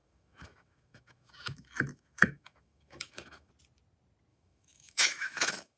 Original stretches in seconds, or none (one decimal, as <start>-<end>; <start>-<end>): 3.5-4.3